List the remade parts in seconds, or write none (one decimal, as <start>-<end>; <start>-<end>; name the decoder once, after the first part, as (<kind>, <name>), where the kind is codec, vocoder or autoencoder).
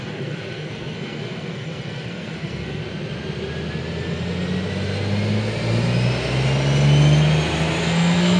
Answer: 0.0-2.8 (codec, SNAC); 7.8-8.4